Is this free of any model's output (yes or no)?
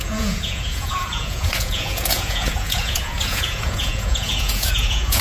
no